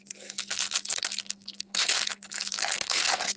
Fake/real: fake